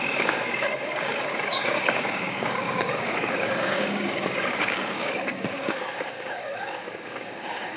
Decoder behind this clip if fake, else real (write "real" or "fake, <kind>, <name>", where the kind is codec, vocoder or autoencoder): fake, codec, DAC